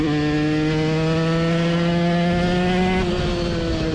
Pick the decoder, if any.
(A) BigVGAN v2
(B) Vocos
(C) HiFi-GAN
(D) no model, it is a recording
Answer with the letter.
D